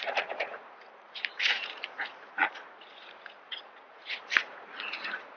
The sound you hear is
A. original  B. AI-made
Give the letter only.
B